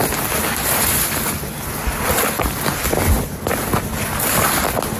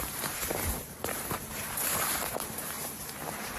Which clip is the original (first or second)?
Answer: first